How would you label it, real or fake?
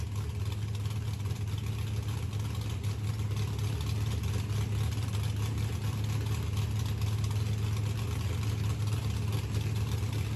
real